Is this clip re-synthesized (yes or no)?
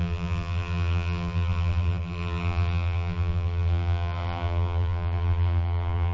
yes